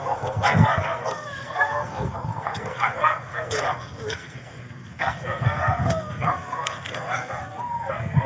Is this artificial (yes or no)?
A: yes